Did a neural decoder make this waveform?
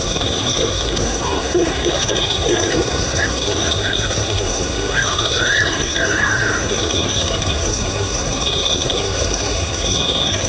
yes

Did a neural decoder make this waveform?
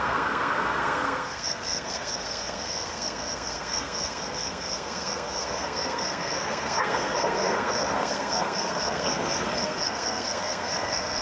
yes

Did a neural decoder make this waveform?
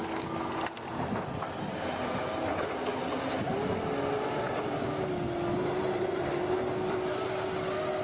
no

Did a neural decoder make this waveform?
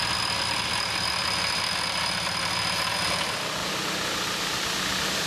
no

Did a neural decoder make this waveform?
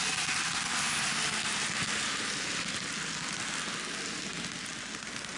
no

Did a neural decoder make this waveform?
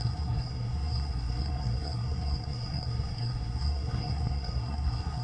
yes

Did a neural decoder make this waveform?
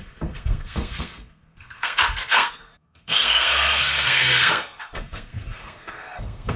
yes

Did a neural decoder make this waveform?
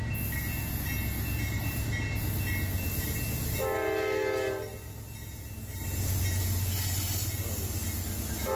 no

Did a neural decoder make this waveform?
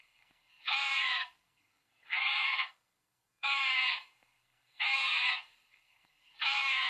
yes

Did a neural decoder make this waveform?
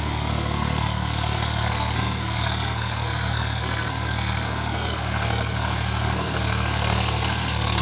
yes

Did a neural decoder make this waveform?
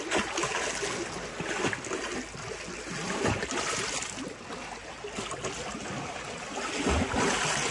no